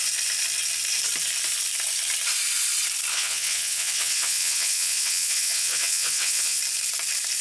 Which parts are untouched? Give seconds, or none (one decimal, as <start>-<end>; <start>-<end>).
0.0-3.1; 6.6-7.4